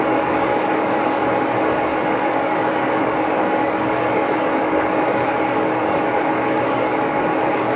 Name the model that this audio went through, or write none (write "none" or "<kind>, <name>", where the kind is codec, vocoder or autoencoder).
codec, DAC